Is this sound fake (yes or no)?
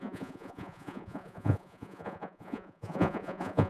yes